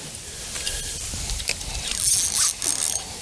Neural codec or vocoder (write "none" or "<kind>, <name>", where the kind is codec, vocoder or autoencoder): none